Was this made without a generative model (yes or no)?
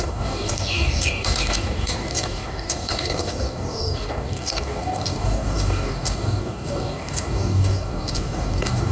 no